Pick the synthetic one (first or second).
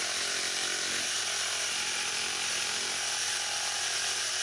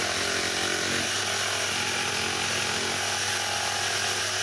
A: first